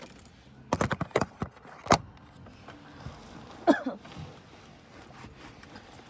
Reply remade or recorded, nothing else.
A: recorded